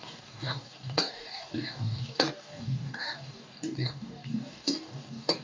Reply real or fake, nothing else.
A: fake